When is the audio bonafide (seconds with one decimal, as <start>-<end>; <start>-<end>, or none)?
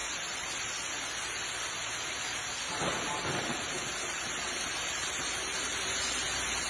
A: 0.0-6.7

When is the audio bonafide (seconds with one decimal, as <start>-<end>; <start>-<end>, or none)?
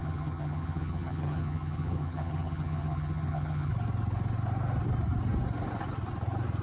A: 3.7-6.6